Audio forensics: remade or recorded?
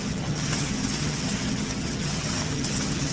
remade